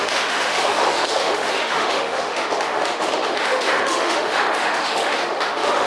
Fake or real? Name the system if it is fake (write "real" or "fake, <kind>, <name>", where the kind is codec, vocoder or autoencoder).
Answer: fake, autoencoder, DAC-VAE